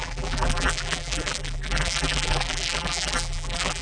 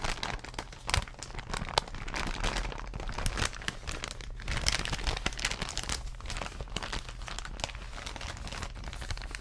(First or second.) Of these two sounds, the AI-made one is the first